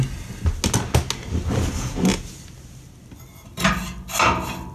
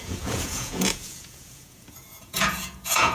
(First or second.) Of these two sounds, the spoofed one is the second